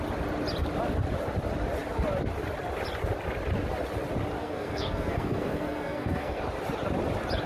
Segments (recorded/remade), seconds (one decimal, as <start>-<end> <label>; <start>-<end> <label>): 0.0-4.4 recorded; 4.4-6.4 remade; 6.4-7.5 recorded